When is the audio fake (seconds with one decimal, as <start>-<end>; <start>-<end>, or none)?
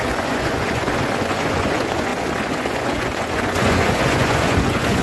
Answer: 0.0-5.0